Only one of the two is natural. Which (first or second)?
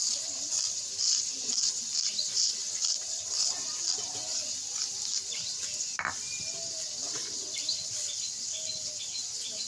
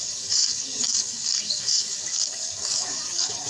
first